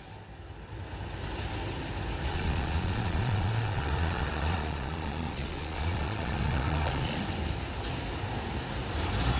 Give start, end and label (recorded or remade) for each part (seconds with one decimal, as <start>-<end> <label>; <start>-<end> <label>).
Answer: 0.0-2.3 recorded; 2.3-7.2 remade; 7.2-9.4 recorded